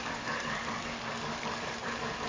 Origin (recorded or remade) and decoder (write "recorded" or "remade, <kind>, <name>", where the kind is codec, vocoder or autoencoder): remade, codec, DAC